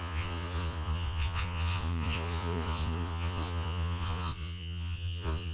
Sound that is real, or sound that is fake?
fake